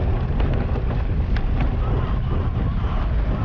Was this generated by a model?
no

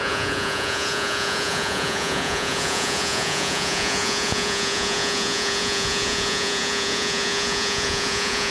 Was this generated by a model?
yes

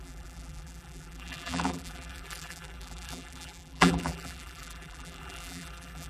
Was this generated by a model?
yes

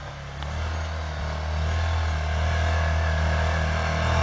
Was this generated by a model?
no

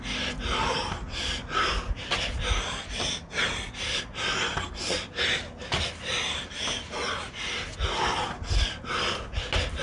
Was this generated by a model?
no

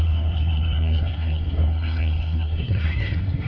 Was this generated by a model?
yes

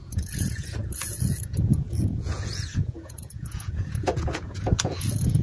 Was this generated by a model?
yes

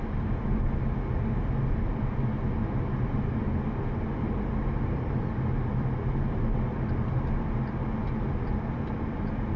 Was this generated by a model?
no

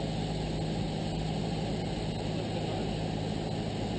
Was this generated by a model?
no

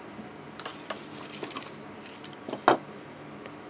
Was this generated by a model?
no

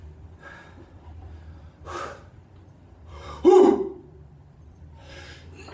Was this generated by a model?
yes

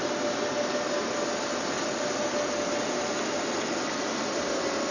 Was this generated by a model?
no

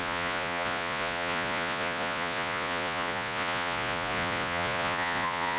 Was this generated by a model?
yes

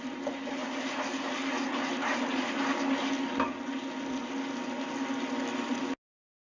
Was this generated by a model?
no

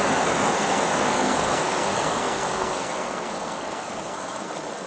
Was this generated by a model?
yes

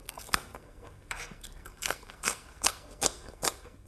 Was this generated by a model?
yes